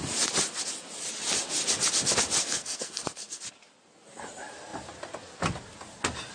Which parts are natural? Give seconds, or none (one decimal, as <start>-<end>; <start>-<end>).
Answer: 0.0-2.4; 3.4-6.3